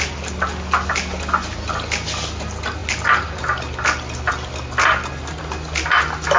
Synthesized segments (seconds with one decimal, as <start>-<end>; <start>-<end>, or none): none